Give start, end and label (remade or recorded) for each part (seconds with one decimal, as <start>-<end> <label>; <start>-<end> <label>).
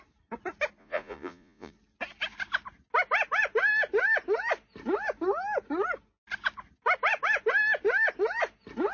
0.0-0.8 recorded; 0.8-1.7 remade; 1.7-8.9 recorded